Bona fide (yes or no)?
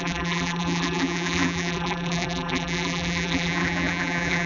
no